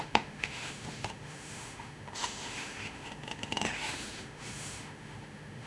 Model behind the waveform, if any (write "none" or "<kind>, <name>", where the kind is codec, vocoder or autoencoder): autoencoder, DAC-VAE